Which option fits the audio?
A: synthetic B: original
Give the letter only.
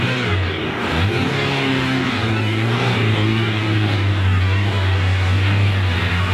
A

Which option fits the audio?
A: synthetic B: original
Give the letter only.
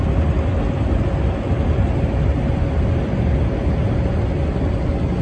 B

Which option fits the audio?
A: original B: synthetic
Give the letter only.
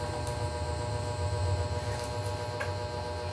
A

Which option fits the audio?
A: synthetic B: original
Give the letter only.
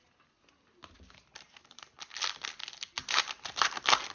B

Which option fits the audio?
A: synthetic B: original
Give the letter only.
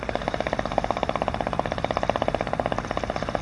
B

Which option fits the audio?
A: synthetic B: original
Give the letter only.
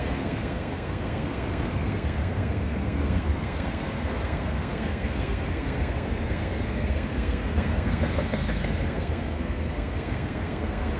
A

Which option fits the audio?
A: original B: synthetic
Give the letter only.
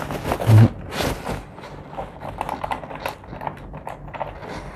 A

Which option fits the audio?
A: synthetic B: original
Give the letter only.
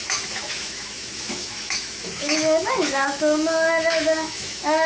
A